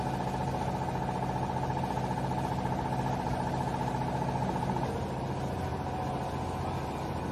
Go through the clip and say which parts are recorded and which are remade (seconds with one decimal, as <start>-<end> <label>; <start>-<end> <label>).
0.0-7.3 recorded